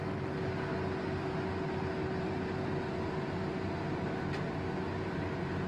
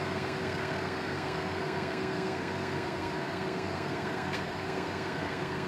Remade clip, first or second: second